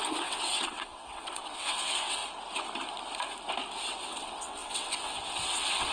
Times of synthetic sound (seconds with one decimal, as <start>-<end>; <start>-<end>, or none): 0.0-2.2; 4.0-5.9